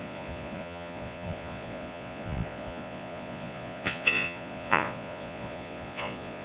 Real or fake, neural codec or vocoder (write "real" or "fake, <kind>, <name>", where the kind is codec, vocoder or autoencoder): fake, vocoder, Vocos